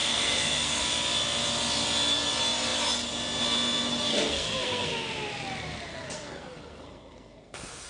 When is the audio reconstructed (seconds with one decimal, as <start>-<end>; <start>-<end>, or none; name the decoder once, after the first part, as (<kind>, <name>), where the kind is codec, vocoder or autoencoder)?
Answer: 0.0-0.8 (codec, SNAC); 4.1-4.9; 5.9-7.9